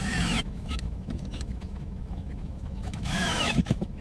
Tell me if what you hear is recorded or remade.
remade